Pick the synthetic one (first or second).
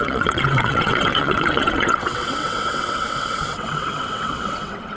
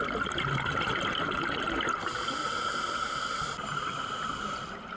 first